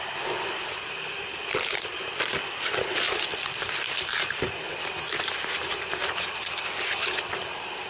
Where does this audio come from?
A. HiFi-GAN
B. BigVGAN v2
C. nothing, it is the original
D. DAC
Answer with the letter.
B